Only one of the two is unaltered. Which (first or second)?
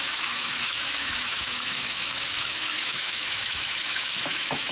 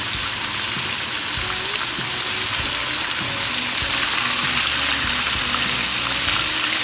second